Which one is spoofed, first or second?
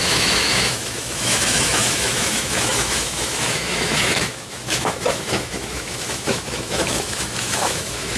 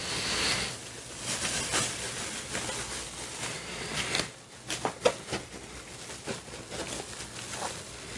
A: first